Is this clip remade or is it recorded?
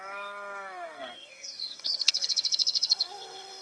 remade